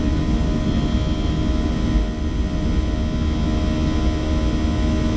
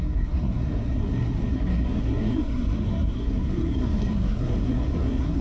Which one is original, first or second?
first